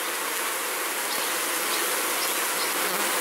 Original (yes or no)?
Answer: yes